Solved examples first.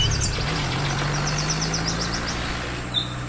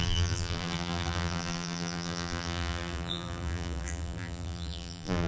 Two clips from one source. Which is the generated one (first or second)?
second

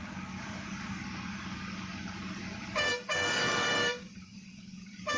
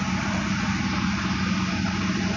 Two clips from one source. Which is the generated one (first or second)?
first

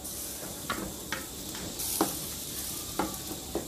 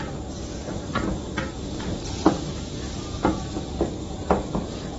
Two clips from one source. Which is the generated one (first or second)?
first